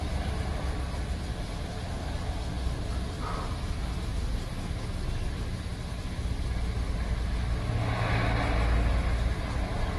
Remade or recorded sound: recorded